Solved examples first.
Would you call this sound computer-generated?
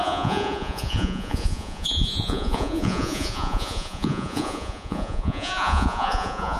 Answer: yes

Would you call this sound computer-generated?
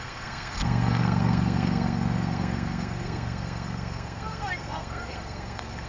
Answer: yes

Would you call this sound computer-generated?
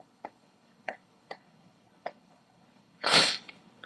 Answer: yes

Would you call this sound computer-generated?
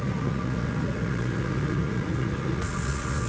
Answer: yes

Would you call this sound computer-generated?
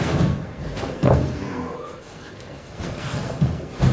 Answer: yes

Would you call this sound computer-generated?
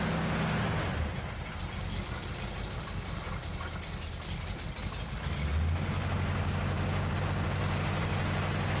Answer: no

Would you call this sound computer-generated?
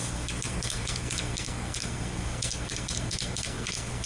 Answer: yes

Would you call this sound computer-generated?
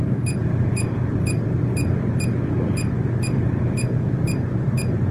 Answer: yes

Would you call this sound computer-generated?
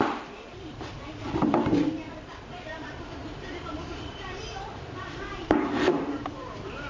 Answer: yes